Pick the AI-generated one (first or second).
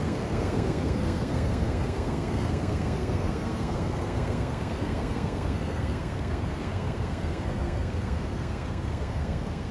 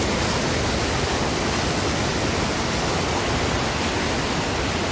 first